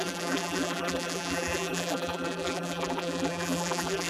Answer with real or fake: fake